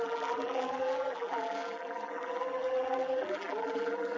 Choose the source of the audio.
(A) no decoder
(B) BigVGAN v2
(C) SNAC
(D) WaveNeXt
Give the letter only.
B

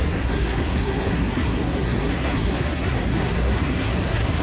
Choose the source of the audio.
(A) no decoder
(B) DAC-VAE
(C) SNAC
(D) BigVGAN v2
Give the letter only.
C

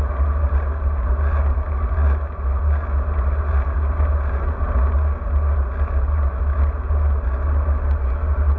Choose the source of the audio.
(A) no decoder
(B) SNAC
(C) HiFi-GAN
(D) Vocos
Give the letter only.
A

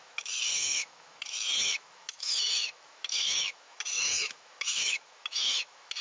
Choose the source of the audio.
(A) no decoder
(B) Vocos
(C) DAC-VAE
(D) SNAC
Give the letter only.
C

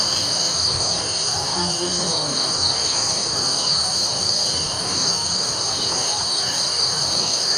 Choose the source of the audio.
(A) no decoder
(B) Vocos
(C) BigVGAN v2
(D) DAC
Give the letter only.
D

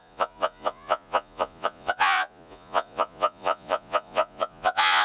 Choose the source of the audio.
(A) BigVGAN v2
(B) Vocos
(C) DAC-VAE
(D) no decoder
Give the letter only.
B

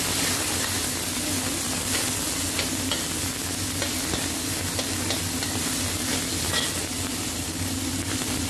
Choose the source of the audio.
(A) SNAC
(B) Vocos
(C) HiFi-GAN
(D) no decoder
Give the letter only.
D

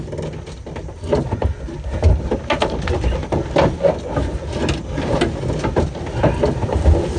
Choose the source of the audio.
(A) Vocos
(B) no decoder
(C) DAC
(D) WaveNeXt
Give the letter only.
B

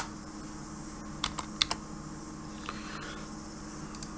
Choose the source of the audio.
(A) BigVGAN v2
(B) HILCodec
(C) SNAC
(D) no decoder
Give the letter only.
D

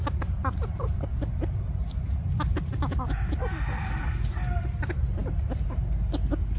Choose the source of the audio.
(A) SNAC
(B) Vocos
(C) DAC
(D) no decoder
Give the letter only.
D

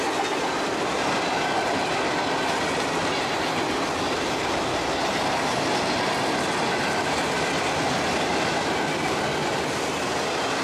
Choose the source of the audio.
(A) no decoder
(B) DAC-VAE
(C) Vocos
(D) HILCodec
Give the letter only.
A